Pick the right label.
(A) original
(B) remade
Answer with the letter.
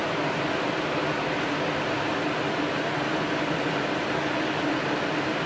A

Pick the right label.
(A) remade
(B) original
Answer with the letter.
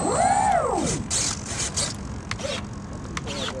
B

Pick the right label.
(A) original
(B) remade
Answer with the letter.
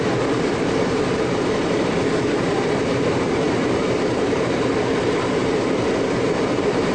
B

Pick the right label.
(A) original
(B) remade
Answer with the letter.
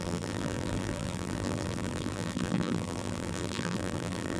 B